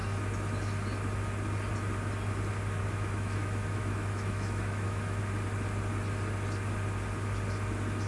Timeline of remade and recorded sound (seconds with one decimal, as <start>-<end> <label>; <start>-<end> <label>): 0.0-2.8 recorded; 2.8-5.2 remade; 5.2-8.1 recorded

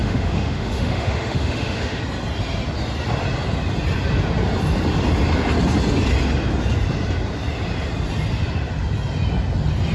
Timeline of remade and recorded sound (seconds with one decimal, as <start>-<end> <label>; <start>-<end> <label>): 0.0-2.0 remade; 2.0-9.9 recorded

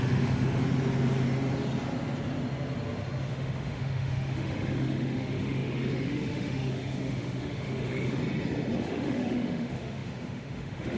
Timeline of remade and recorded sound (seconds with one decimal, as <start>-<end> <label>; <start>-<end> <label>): 0.0-0.6 remade; 0.6-3.3 recorded; 3.3-8.2 remade; 8.2-8.8 recorded; 8.8-11.0 remade

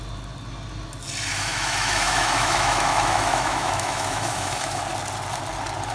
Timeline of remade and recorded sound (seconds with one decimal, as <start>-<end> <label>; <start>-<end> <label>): 0.0-1.3 recorded; 1.3-4.8 remade; 4.8-5.9 recorded

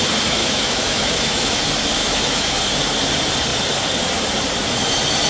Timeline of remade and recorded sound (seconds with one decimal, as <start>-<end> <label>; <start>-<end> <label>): 0.0-0.4 recorded; 0.4-1.6 remade; 1.6-2.0 recorded; 2.0-2.6 remade; 2.6-5.3 recorded